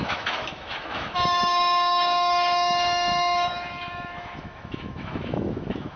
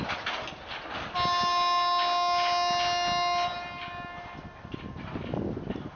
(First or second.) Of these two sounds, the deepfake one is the first